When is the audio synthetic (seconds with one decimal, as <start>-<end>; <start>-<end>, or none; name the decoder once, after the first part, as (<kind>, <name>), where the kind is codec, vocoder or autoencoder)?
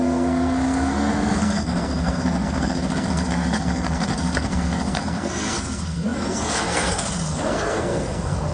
0.0-8.5 (codec, SNAC)